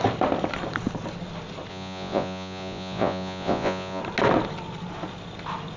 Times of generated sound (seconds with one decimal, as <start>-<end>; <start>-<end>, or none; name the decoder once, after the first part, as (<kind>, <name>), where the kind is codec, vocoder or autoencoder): 1.7-4.0 (vocoder, Vocos)